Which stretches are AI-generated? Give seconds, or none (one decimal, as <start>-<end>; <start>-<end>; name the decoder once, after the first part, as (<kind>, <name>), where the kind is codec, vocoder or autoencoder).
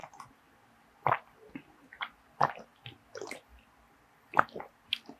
none